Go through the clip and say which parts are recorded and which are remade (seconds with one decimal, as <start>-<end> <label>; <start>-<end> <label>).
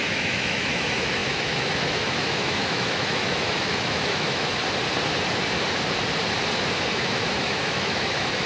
0.0-4.6 remade; 4.6-6.9 recorded; 6.9-8.5 remade